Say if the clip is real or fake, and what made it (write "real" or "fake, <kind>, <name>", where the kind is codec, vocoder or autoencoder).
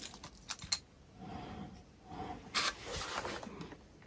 real